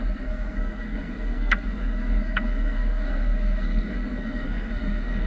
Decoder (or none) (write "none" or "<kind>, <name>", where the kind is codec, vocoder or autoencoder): codec, SNAC